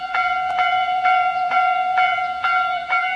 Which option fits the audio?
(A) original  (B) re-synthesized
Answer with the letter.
B